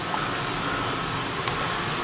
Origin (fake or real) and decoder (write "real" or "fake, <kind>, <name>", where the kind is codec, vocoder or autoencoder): real